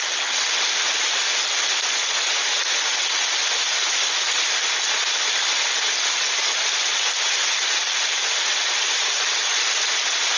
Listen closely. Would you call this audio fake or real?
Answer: real